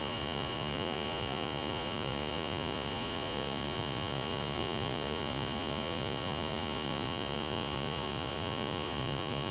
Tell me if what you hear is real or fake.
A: fake